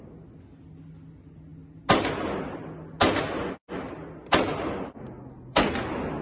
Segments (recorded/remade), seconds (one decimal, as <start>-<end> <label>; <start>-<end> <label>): 0.0-6.2 recorded